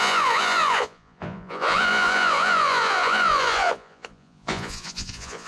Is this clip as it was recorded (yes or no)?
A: no